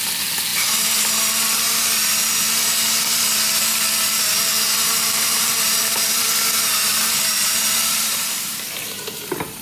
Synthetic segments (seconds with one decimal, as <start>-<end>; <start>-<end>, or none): 4.1-9.1